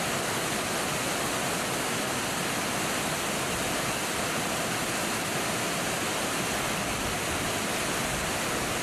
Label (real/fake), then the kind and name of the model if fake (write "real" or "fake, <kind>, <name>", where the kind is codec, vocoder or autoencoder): real